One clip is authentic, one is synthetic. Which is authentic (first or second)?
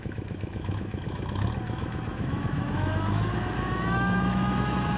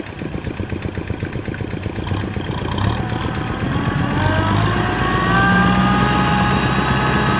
second